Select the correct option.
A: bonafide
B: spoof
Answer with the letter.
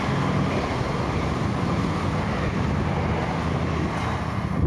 A